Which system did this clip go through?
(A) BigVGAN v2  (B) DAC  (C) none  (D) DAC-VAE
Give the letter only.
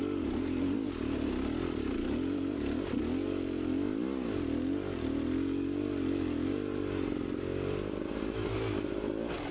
C